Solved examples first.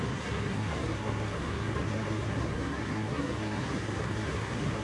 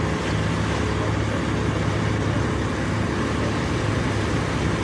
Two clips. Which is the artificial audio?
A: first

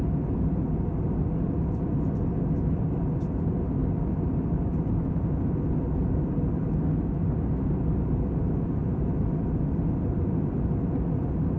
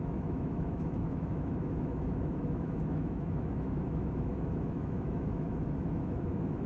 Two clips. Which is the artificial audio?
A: second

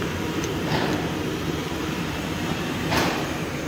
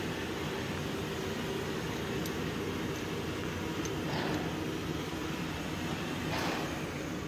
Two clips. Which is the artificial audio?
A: first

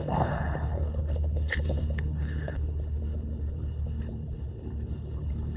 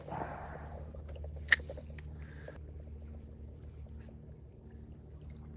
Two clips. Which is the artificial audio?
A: first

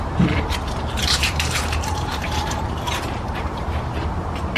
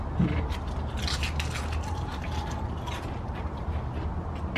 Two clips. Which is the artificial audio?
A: first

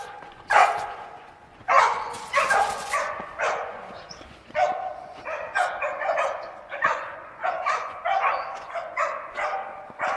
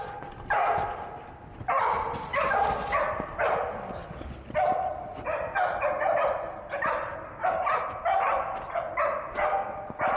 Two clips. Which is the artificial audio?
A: first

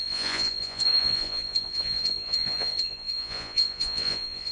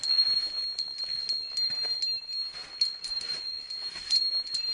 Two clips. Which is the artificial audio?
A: first